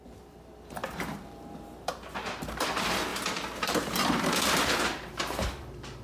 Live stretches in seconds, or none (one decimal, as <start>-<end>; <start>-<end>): none